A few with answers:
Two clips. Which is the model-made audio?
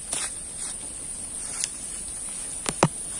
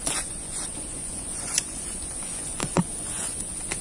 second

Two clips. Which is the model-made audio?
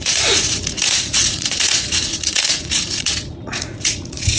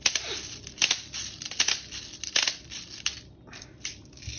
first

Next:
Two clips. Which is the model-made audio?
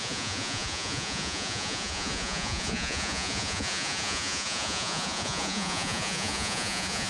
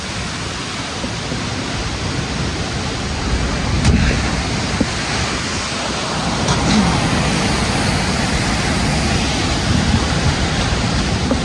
first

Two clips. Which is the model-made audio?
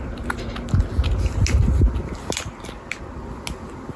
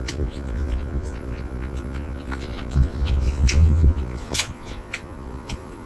second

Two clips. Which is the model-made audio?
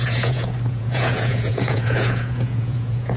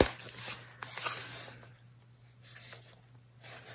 first